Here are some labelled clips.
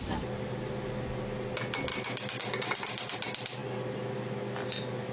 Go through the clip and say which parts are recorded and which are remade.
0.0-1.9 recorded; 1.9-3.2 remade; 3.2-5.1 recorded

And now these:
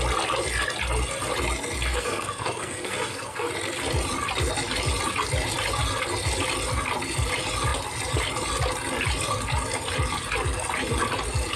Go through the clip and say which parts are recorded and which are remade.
0.0-1.9 recorded; 1.9-3.5 remade; 3.5-11.6 recorded